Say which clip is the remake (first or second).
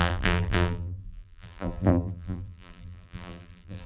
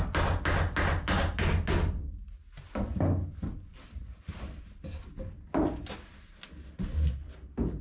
first